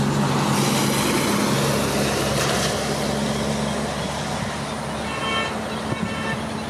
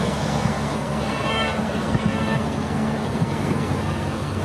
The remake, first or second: second